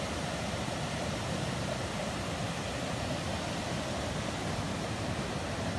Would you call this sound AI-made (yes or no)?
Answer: no